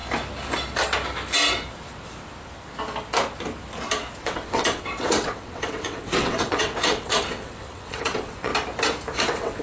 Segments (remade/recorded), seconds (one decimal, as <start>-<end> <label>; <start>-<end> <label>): 0.0-4.2 recorded; 4.2-8.5 remade; 8.5-9.2 recorded; 9.2-9.6 remade